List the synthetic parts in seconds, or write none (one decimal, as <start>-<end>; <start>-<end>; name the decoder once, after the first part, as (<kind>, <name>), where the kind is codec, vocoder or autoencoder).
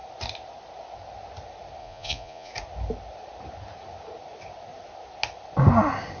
1.8-2.5 (vocoder, Vocos)